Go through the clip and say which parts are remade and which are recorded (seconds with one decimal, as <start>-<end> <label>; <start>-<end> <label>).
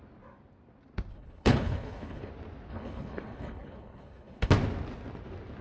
0.0-1.1 recorded; 1.1-2.3 remade; 2.3-2.7 recorded; 2.7-4.5 remade; 4.5-5.6 recorded